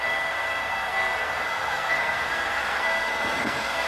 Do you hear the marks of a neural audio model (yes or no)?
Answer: yes